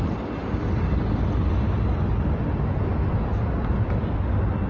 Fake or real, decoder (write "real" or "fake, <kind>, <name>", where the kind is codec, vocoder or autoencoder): real